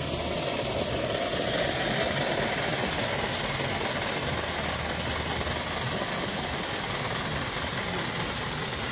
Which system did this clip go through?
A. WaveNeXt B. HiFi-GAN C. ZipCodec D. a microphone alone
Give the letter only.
D